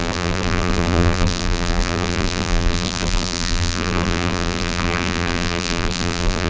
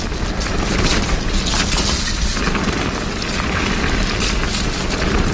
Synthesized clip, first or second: first